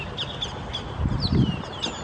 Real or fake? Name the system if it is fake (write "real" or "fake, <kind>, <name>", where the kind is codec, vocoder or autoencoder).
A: real